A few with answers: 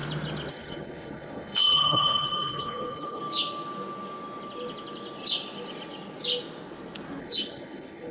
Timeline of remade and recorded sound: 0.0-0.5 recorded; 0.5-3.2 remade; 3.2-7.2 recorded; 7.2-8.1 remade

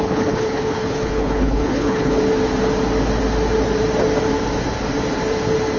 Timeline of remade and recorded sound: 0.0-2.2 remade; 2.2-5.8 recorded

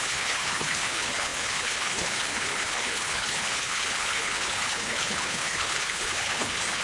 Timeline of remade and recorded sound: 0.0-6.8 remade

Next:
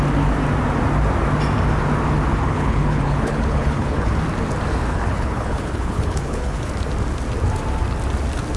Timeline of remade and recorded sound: 0.0-2.4 recorded; 2.4-4.1 remade; 4.1-4.9 recorded; 4.9-6.7 remade; 6.7-8.6 recorded

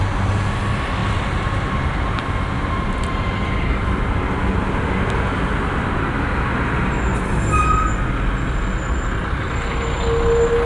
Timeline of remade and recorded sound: 0.0-10.7 recorded

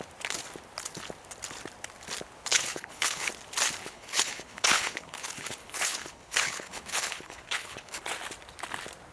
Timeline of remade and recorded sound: 0.0-2.5 recorded; 2.5-3.3 remade; 3.3-3.8 recorded; 3.8-8.0 remade; 8.0-9.1 recorded